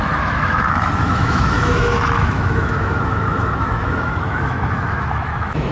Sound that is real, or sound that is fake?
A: fake